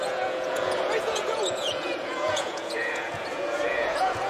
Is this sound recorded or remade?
remade